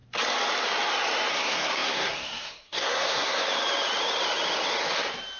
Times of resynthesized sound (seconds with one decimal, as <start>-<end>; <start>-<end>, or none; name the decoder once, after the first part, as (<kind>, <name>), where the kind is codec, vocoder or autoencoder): 1.3-3.4 (codec, SNAC)